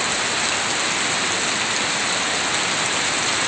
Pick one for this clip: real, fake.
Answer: real